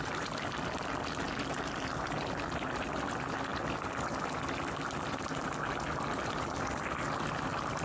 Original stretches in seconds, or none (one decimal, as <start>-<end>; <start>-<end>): 0.0-7.8